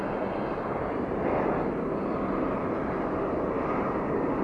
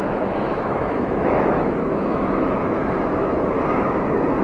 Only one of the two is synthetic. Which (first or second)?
second